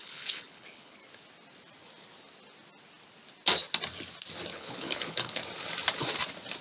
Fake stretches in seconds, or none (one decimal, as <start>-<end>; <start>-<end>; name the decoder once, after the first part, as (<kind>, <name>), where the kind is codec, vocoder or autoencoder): 0.0-1.0 (codec, HILCodec); 4.5-5.4

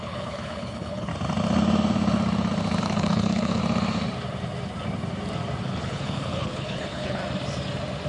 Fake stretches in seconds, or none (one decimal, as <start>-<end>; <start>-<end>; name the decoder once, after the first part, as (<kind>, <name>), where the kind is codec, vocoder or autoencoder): 0.0-1.1 (codec, HILCodec); 2.8-3.6; 5.6-7.2

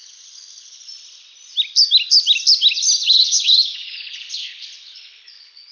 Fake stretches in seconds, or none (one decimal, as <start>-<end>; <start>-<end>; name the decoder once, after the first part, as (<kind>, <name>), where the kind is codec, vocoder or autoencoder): 0.0-0.9 (codec, HILCodec); 3.1-5.7

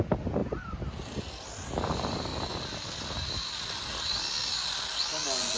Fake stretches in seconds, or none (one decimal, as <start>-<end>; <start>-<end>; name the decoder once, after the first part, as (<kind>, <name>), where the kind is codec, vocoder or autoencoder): none

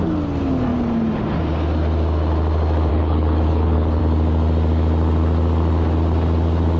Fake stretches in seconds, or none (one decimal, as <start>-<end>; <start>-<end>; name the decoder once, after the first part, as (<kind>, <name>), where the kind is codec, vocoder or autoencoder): 2.9-4.0 (codec, HILCodec)

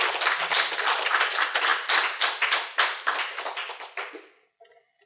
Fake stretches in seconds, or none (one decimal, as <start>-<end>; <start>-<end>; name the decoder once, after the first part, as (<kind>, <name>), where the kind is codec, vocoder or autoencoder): none

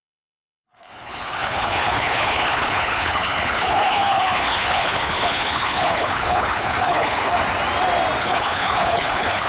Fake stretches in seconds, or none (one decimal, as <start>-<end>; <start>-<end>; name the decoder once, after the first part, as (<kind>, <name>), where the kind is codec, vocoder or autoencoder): 0.0-7.3 (codec, HILCodec); 8.2-9.5

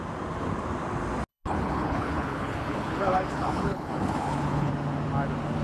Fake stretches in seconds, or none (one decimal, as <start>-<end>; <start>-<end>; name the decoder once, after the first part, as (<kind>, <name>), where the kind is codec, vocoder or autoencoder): 1.3-4.7 (codec, HILCodec)